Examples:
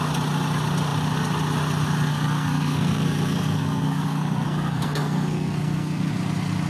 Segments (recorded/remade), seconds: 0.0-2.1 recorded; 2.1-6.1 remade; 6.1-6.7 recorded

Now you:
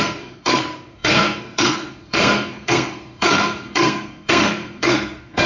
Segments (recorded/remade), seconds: 0.0-5.5 remade

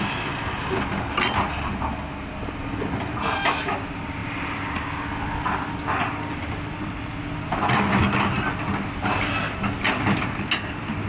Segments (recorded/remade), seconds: 0.0-11.1 recorded

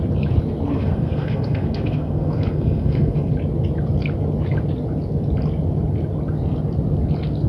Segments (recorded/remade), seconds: 0.0-0.7 recorded; 0.7-3.3 remade; 3.3-7.5 recorded